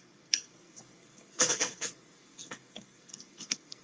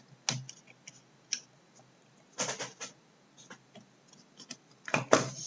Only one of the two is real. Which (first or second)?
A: second